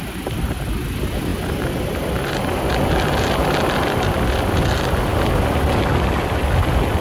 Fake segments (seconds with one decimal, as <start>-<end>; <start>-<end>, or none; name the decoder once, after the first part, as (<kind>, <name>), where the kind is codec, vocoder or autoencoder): none